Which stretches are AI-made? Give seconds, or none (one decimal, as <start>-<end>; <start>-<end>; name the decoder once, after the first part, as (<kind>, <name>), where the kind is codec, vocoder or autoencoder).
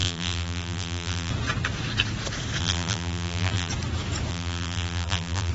0.0-1.3 (vocoder, BigVGAN v2); 2.6-3.7; 4.3-5.5